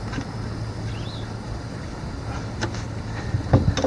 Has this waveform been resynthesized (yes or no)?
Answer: no